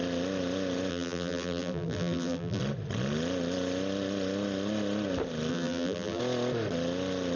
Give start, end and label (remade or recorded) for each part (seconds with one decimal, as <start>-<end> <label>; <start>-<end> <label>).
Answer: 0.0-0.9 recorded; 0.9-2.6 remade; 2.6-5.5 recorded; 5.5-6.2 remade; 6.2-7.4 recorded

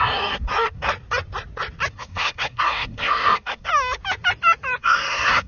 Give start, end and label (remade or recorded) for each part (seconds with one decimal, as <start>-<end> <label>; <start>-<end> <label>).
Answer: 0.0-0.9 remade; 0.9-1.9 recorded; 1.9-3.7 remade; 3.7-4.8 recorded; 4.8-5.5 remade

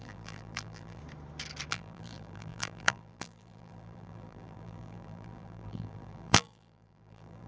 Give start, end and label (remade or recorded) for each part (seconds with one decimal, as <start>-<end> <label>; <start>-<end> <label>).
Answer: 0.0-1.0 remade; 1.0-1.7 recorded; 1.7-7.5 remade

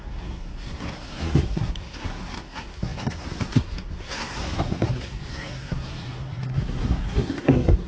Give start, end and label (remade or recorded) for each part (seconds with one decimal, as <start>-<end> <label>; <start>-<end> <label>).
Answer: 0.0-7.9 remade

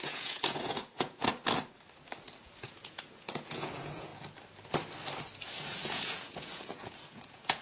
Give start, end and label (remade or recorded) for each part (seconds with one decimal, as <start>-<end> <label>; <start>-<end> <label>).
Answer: 0.0-1.3 remade; 1.3-2.4 recorded; 2.4-4.1 remade; 4.1-5.8 recorded; 5.8-7.6 remade

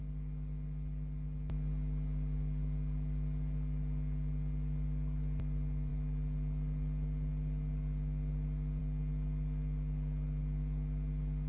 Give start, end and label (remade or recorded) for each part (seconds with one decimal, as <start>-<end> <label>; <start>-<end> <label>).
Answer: 0.0-11.5 recorded